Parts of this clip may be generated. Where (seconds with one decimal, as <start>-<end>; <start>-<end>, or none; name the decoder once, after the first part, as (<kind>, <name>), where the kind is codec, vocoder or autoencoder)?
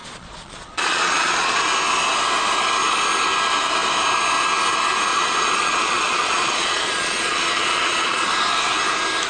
0.0-1.6 (vocoder, Vocos); 5.1-8.3